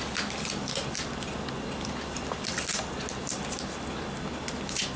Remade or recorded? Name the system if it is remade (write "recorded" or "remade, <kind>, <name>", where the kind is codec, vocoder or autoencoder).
recorded